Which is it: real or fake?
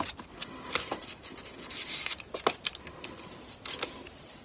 real